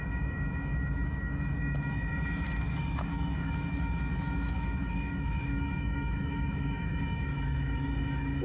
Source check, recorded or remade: remade